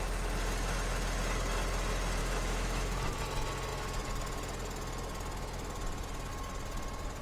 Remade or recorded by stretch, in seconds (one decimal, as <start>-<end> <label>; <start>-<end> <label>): 0.0-2.2 recorded; 2.2-3.2 remade; 3.2-7.2 recorded